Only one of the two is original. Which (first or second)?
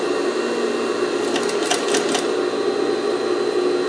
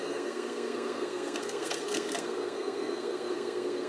first